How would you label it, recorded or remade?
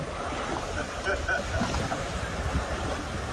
recorded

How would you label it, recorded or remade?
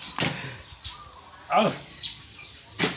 recorded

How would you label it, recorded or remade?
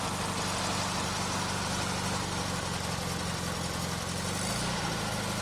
recorded